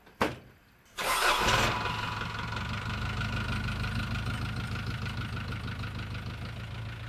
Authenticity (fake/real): real